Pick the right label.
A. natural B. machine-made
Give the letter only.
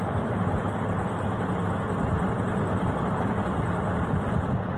A